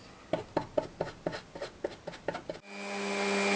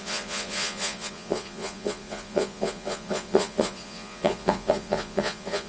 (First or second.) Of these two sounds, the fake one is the second